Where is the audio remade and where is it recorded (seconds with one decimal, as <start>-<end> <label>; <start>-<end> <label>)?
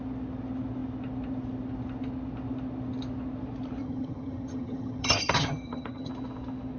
0.0-3.8 recorded; 3.8-6.1 remade; 6.1-6.8 recorded